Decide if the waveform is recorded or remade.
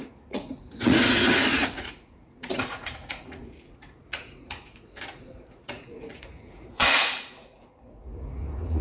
remade